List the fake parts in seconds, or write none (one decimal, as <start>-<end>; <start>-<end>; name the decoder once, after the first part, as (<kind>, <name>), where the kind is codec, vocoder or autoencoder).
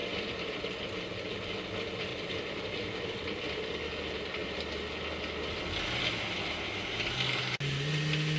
2.1-3.4 (vocoder, BigVGAN v2); 4.4-5.0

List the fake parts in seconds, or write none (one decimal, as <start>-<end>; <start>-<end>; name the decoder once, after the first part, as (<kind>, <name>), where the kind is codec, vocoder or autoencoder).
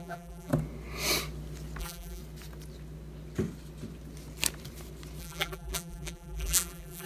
0.0-0.5 (vocoder, BigVGAN v2); 1.8-2.2; 5.2-7.1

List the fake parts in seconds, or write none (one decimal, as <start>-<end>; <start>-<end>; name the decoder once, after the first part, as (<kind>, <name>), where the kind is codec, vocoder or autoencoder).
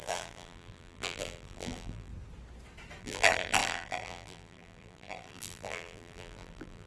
0.0-2.1 (vocoder, BigVGAN v2); 3.0-6.9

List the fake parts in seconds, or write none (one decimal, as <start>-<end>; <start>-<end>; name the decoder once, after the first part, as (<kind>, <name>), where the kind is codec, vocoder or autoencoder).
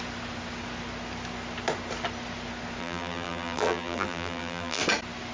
2.8-4.8 (vocoder, BigVGAN v2)